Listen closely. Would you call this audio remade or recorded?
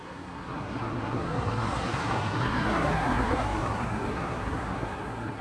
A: remade